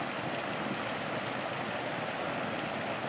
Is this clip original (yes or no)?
yes